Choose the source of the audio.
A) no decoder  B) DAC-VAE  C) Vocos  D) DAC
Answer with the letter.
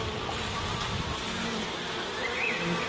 A